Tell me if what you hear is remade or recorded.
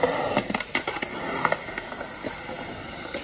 recorded